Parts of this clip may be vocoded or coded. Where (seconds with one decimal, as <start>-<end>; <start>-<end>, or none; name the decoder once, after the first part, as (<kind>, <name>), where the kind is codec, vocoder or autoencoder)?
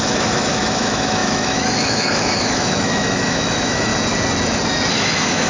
0.0-3.9 (autoencoder, DAC-VAE); 4.9-5.5